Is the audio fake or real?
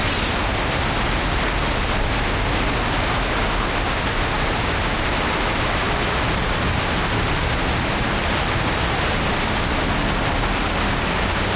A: real